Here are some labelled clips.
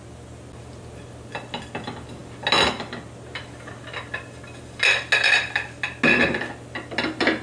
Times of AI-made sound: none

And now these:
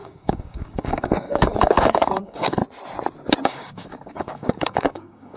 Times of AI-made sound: 0.0-2.6; 3.4-5.4

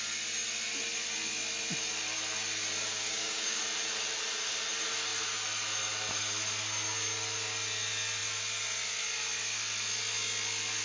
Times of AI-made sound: 2.9-3.6

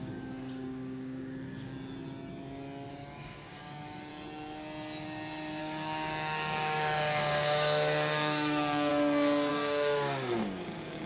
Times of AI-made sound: 0.0-1.7; 2.9-4.1; 5.6-8.9; 9.5-11.1